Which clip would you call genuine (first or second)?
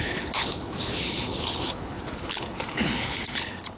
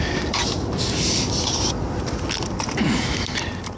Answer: second